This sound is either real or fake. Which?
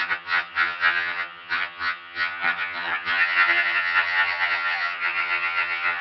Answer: fake